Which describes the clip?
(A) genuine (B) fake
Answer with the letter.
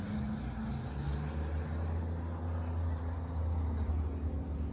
A